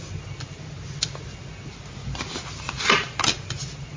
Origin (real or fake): real